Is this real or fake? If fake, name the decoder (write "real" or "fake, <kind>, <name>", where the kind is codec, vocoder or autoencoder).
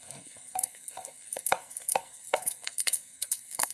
fake, codec, SNAC